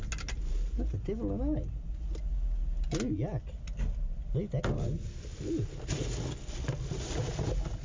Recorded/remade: recorded